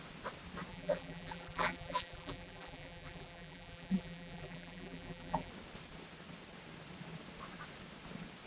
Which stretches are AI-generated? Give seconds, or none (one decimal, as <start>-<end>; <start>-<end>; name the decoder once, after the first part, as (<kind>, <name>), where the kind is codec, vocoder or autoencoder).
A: 0.7-5.5 (vocoder, BigVGAN v2)